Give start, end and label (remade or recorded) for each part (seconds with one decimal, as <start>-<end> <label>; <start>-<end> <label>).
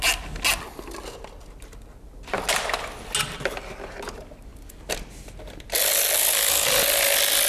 0.0-7.5 recorded